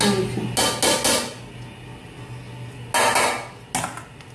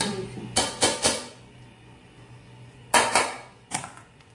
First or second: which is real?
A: first